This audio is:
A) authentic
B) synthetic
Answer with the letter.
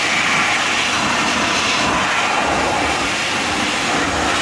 A